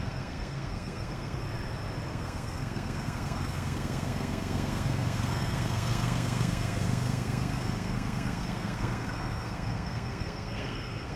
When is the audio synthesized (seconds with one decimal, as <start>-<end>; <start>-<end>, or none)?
0.0-1.4; 2.1-11.2